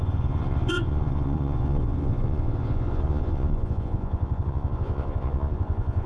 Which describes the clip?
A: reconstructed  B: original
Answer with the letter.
A